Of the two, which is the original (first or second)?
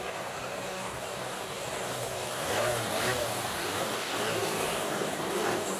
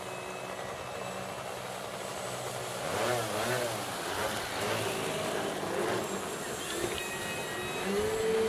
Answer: second